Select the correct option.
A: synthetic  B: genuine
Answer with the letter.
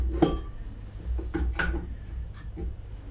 B